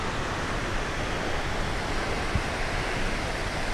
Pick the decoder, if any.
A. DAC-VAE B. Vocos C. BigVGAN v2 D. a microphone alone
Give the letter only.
D